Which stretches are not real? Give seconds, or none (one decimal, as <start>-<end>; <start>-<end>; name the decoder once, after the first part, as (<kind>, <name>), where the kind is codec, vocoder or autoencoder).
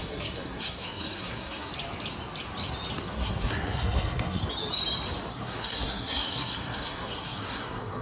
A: 0.0-1.7 (codec, SNAC); 3.0-4.4; 5.3-8.0